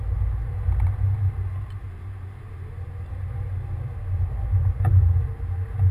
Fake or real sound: real